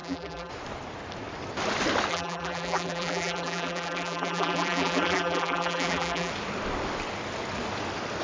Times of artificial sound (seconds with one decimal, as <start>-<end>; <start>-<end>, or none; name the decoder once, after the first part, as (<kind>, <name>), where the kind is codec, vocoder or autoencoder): 0.0-0.5 (vocoder, BigVGAN v2); 2.1-6.3